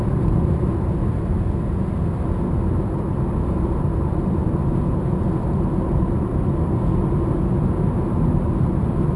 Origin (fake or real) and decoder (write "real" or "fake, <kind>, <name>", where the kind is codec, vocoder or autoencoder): real